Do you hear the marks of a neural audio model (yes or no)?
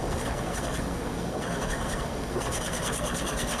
yes